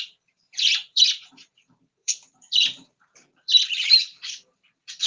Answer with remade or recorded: remade